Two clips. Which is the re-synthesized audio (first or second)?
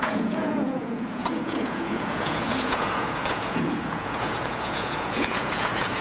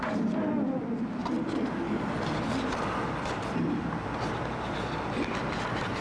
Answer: first